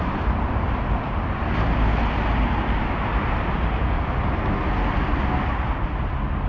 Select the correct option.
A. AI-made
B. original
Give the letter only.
B